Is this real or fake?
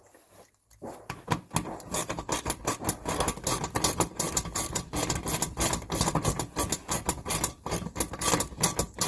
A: real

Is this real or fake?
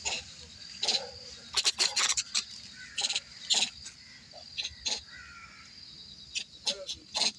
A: real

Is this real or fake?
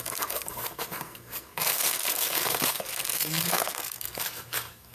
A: fake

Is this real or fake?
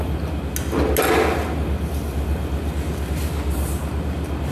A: real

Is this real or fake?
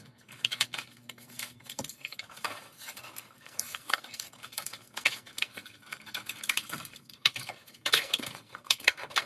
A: fake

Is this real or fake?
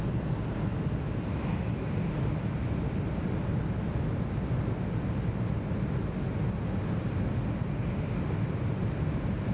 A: real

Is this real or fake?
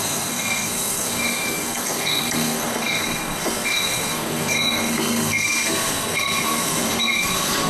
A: fake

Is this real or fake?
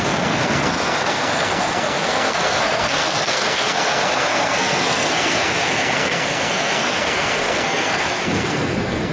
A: fake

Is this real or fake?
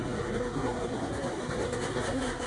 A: fake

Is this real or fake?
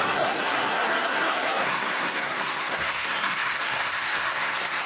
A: fake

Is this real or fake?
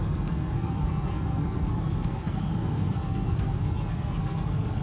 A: fake